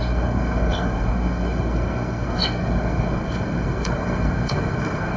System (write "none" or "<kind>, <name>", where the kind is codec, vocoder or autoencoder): codec, SNAC